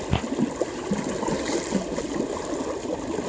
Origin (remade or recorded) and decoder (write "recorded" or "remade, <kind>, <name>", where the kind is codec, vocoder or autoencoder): recorded